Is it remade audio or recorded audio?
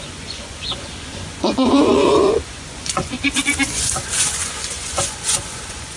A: remade